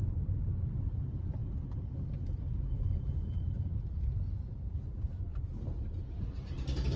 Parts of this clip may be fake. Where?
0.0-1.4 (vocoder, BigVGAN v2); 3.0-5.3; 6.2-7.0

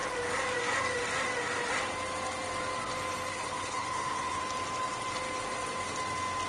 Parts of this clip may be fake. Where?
3.3-4.4 (codec, HILCodec)

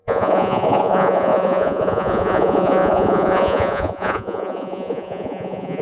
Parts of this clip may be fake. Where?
0.0-5.8 (vocoder, Vocos)

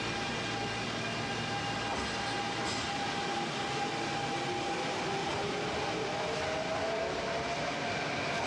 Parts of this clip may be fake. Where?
none

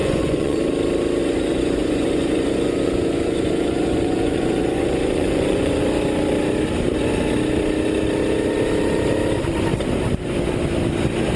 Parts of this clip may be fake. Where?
0.0-0.6 (vocoder, Vocos); 1.2-5.8

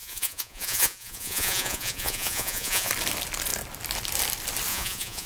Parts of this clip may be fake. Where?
0.0-2.9 (vocoder, Vocos); 4.7-5.3